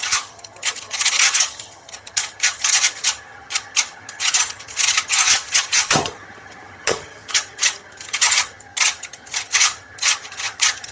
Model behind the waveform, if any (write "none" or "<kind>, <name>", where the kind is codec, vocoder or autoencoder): vocoder, HiFi-GAN